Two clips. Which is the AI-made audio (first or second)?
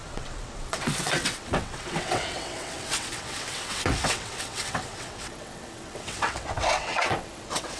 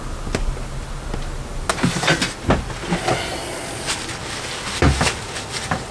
first